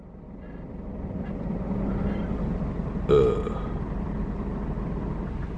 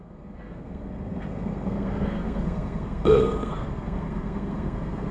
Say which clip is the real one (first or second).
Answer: first